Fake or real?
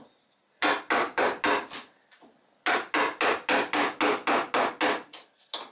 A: real